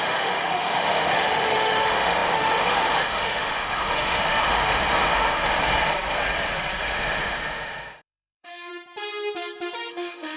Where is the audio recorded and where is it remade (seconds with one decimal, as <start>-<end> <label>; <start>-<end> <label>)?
0.0-5.4 remade; 5.4-6.8 recorded; 6.8-8.7 remade; 8.7-9.9 recorded; 9.9-10.4 remade